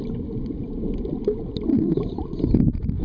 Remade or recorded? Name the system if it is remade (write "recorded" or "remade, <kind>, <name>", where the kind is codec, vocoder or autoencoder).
recorded